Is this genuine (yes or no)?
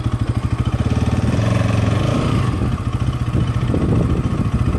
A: yes